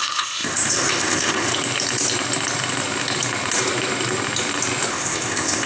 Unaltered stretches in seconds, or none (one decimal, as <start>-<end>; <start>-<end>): 1.5-4.9